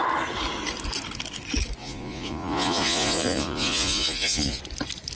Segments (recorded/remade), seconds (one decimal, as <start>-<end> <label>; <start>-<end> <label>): 0.0-1.8 recorded; 1.8-4.6 remade; 4.6-5.2 recorded

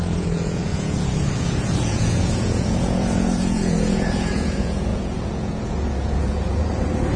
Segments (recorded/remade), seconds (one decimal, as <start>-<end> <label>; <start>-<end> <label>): 0.0-7.2 remade

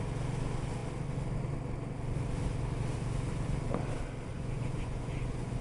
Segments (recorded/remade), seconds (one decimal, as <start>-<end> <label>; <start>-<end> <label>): 0.0-4.3 recorded; 4.3-5.6 remade

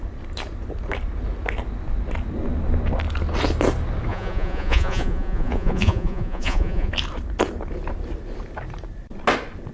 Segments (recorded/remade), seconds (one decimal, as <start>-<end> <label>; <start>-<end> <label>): 0.0-4.1 recorded; 4.1-6.9 remade; 6.9-9.7 recorded

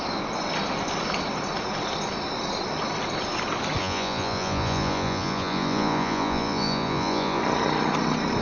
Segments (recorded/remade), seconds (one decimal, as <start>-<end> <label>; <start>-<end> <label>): 0.0-3.8 recorded; 3.8-7.4 remade; 7.4-8.4 recorded

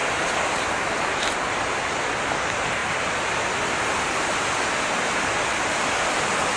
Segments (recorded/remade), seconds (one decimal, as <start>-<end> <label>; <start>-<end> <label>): 0.0-6.6 recorded

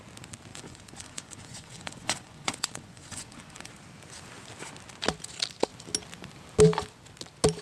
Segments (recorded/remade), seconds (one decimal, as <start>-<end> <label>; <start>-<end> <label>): 0.0-0.5 recorded; 0.5-3.7 remade; 3.7-7.6 recorded

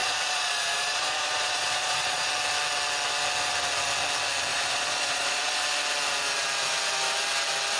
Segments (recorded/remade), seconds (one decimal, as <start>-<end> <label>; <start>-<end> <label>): 0.0-2.3 remade; 2.3-4.5 recorded; 4.5-5.6 remade; 5.6-7.8 recorded